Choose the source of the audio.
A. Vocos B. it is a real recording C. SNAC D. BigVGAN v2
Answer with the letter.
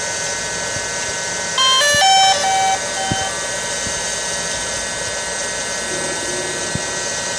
B